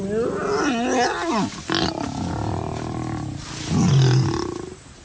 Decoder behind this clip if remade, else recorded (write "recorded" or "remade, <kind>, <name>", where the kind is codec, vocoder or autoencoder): recorded